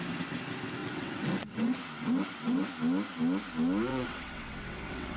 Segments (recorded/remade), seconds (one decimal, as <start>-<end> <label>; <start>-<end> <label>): 0.0-0.8 recorded; 0.8-2.7 remade; 2.7-3.9 recorded; 3.9-5.2 remade